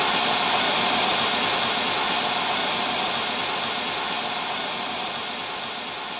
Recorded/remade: recorded